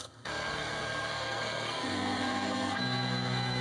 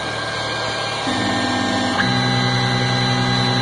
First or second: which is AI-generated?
first